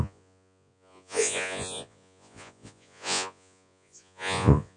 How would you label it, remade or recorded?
remade